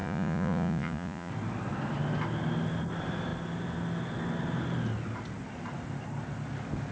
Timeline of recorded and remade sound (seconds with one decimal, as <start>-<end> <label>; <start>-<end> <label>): 0.0-1.3 remade; 1.3-6.9 recorded